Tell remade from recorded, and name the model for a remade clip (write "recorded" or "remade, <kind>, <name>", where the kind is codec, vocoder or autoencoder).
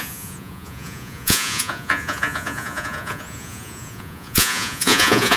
remade, vocoder, Vocos